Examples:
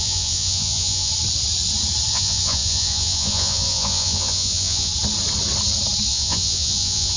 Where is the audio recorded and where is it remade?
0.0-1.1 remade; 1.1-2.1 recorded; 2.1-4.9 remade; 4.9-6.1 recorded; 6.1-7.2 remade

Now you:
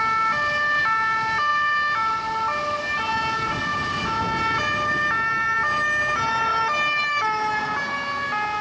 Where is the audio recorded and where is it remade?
0.0-8.6 recorded

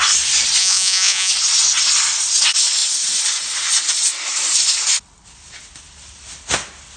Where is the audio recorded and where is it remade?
0.0-0.6 recorded; 0.6-1.3 remade; 1.3-7.0 recorded

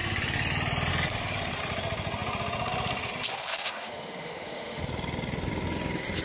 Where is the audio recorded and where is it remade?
0.0-3.5 recorded; 3.5-4.8 remade; 4.8-6.2 recorded

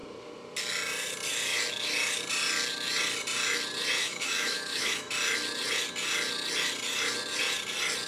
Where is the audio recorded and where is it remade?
0.0-4.0 recorded; 4.0-5.1 remade; 5.1-8.1 recorded

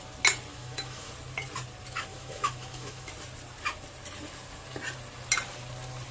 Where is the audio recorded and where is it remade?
0.0-0.5 recorded; 0.5-1.1 remade; 1.1-2.1 recorded; 2.1-3.1 remade; 3.1-6.1 recorded

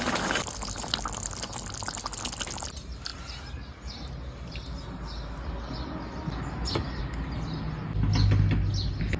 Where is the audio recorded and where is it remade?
0.0-9.2 recorded